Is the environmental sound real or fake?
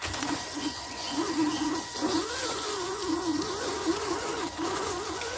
fake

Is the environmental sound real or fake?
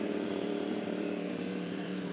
fake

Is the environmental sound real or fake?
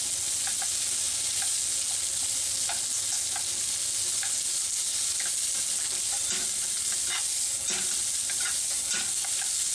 real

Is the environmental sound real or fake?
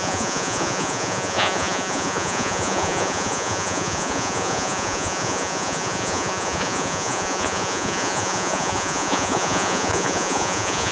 fake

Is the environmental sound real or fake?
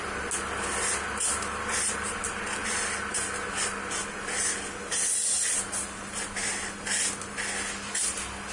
real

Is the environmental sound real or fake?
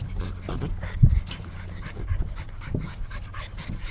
real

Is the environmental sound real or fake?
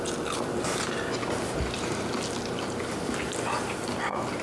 real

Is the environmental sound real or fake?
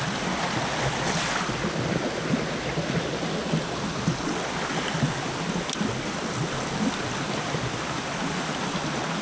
real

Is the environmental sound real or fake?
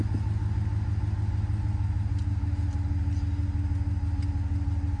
real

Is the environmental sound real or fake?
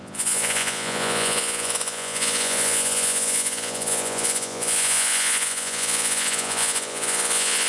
fake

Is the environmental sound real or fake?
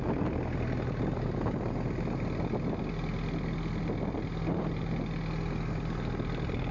real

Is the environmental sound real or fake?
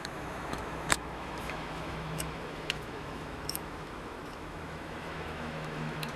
fake